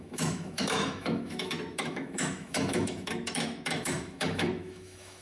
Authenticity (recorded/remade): remade